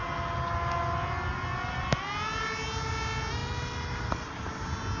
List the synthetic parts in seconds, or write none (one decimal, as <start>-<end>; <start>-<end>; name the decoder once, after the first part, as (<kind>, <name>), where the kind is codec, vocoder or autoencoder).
none